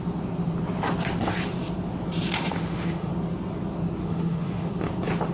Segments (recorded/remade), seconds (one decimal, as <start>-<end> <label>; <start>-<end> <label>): 0.0-2.4 recorded; 2.4-3.1 remade; 3.1-4.0 recorded; 4.0-4.7 remade; 4.7-5.3 recorded